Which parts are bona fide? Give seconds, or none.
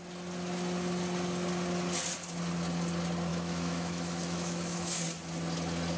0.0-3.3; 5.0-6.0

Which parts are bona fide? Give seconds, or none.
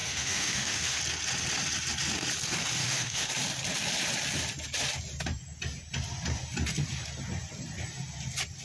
1.0-2.8; 3.3-8.6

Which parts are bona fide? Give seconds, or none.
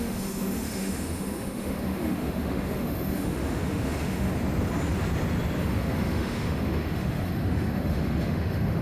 4.3-5.6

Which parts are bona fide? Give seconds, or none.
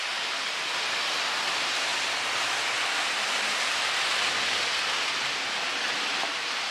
0.0-6.7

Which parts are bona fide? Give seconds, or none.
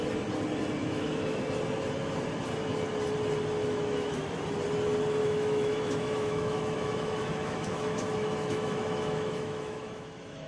0.0-0.8; 1.4-3.6; 4.4-5.2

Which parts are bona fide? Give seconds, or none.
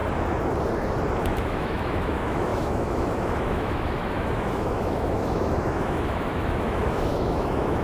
0.0-1.2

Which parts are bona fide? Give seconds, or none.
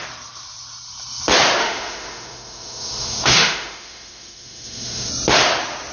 0.0-1.6; 5.1-5.9